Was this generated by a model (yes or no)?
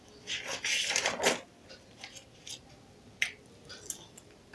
no